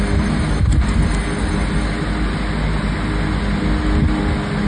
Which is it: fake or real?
real